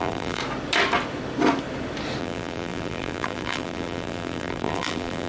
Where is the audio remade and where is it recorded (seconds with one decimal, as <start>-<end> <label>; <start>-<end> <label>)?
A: 0.0-0.4 remade; 0.4-2.2 recorded; 2.2-5.3 remade